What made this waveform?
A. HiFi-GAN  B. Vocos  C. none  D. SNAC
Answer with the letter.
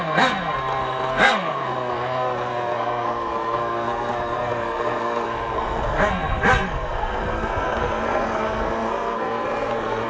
D